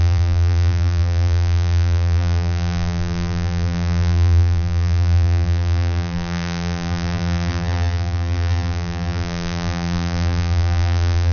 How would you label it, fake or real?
fake